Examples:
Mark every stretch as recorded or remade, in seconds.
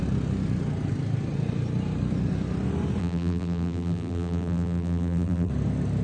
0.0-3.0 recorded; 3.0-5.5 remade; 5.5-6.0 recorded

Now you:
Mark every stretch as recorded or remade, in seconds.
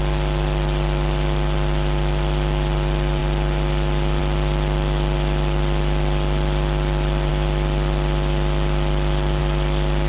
0.0-10.1 recorded